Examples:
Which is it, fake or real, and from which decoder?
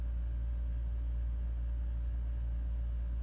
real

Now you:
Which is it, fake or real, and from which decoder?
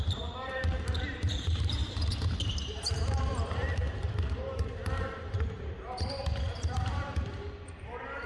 fake, vocoder, BigVGAN v2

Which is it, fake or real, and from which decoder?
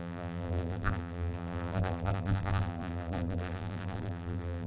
fake, vocoder, BigVGAN v2